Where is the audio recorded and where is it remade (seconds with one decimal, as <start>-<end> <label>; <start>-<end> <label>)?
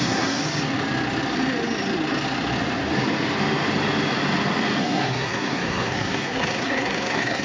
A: 0.0-0.4 remade; 0.4-4.8 recorded; 4.8-7.4 remade